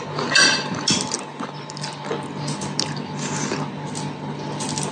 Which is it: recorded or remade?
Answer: recorded